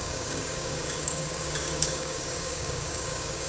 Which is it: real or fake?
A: fake